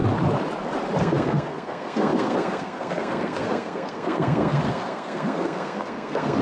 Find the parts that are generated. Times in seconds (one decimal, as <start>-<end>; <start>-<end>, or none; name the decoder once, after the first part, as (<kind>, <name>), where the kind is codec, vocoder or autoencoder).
1.0-6.4 (codec, SNAC)